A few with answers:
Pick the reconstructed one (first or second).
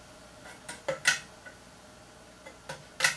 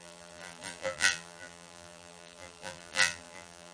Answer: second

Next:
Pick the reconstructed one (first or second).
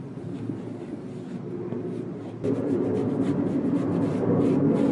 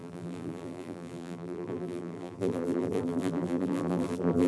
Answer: second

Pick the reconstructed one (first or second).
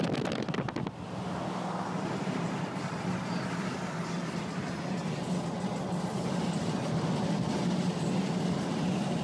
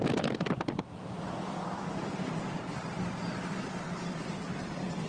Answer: second